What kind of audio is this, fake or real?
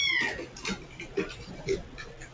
real